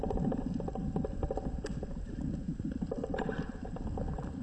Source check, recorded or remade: recorded